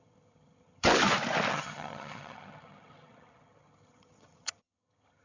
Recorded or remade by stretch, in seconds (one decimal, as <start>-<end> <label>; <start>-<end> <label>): 0.0-0.9 remade; 0.9-1.5 recorded; 1.5-5.2 remade